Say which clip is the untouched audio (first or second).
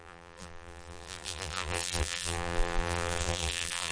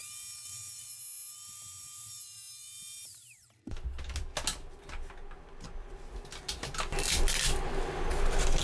second